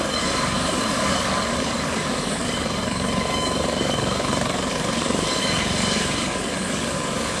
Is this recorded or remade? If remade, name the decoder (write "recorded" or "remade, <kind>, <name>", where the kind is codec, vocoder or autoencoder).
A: remade, codec, DAC